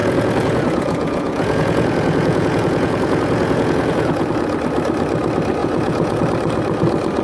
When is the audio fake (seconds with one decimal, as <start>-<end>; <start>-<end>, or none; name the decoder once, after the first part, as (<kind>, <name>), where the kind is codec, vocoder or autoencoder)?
0.0-4.3 (vocoder, Vocos); 5.6-6.2